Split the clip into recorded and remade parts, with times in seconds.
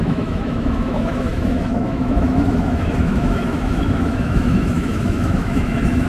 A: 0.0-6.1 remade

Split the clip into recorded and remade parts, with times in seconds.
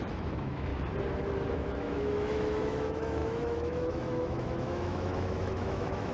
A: 0.0-0.7 remade; 0.7-1.5 recorded; 1.5-6.1 remade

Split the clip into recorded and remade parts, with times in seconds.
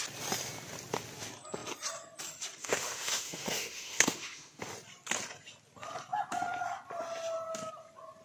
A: 0.0-2.6 recorded; 2.6-4.6 remade; 4.6-8.2 recorded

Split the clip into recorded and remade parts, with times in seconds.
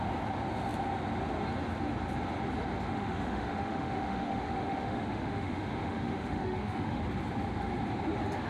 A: 0.0-2.9 recorded; 2.9-7.0 remade; 7.0-8.5 recorded